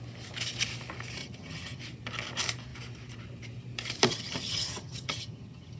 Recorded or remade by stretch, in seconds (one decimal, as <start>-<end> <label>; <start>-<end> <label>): 0.0-1.2 recorded; 1.2-1.8 remade; 1.8-4.1 recorded; 4.1-5.8 remade